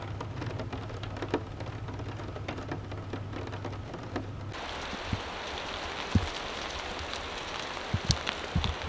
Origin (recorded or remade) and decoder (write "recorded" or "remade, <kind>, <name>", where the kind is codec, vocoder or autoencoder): recorded